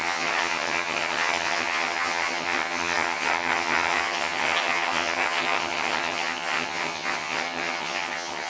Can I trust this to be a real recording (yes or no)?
no